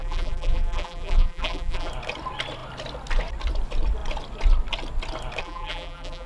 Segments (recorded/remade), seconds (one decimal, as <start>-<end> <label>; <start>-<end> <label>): 0.0-1.9 remade; 1.9-5.4 recorded; 5.4-6.3 remade